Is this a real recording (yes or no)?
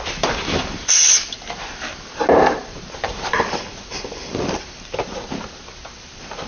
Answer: no